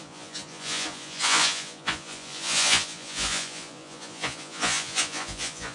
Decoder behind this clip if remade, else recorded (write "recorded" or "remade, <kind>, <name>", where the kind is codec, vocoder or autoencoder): remade, vocoder, Vocos